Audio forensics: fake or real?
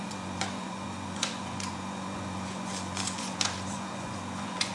fake